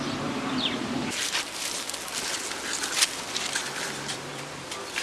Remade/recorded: recorded